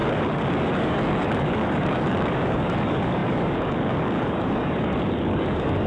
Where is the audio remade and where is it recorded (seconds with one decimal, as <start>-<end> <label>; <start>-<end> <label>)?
0.0-5.9 remade